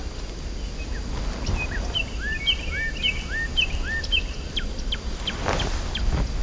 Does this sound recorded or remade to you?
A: recorded